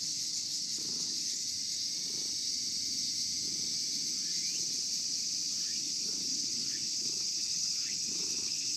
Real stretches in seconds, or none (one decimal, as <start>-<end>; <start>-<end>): 1.4-5.8

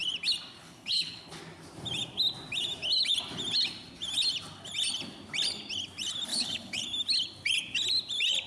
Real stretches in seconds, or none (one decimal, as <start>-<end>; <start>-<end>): 0.0-0.6; 1.4-6.3; 6.8-8.5